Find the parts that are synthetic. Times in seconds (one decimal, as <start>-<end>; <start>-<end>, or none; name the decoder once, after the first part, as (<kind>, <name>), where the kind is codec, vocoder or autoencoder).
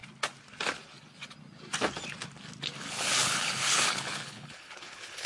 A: 2.8-5.3 (codec, HILCodec)